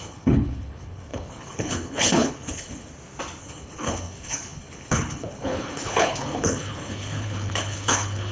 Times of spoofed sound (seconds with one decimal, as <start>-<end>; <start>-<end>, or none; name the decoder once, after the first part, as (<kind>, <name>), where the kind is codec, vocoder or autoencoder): 0.0-2.9 (codec, HILCodec); 3.4-8.3